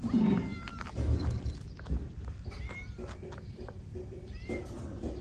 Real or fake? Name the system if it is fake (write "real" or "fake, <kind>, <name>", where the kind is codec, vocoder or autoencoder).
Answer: fake, vocoder, BigVGAN v2